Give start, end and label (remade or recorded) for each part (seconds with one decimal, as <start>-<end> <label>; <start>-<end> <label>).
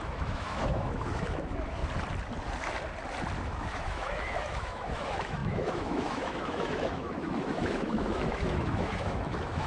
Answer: 0.0-1.8 remade; 1.8-3.4 recorded; 3.4-9.7 remade